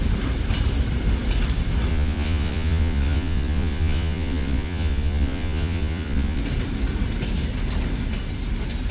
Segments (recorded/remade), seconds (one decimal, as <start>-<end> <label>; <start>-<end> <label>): 0.0-1.9 recorded; 1.9-6.4 remade; 6.4-8.9 recorded